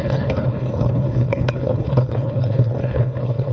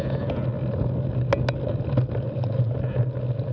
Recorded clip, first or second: second